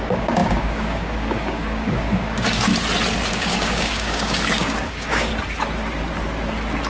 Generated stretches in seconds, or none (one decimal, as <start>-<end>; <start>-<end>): 0.0-2.7; 3.3-5.3

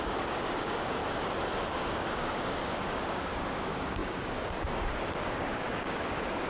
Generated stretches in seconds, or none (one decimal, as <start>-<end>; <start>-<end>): 0.0-1.0; 1.7-6.5

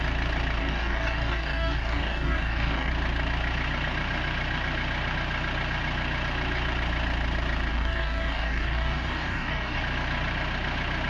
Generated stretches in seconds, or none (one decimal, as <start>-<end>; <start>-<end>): 0.6-2.9; 7.7-9.8

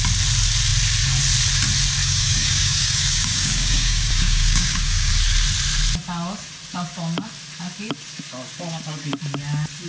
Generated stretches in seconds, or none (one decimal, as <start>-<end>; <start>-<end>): 2.0-5.1

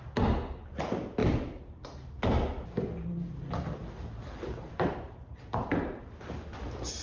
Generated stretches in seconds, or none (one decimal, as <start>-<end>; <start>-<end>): none

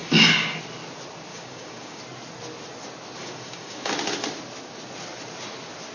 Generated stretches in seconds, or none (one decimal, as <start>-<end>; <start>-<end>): 0.0-0.6; 1.3-2.0; 3.2-3.9

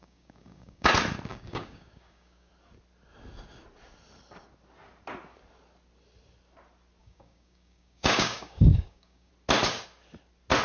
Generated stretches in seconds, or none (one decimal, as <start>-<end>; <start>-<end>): 0.0-0.9; 1.3-2.5; 7.0-9.3

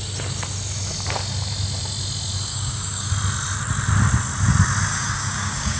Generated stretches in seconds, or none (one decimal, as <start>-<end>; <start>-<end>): 2.5-3.1; 4.9-5.8